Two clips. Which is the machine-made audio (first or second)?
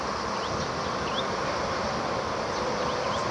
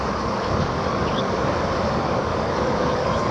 second